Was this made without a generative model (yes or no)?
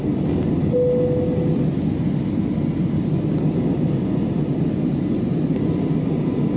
yes